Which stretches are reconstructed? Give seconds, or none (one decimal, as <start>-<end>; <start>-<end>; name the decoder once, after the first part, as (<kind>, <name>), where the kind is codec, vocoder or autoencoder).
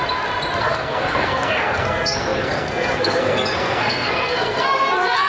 0.6-5.3 (codec, SNAC)